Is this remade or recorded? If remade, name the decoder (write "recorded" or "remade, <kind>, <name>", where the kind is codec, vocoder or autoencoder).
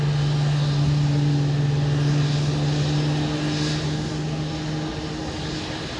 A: recorded